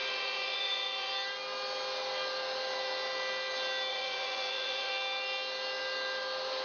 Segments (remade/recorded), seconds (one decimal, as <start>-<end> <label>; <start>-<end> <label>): 0.0-1.1 remade; 1.1-3.9 recorded; 3.9-4.9 remade; 4.9-6.6 recorded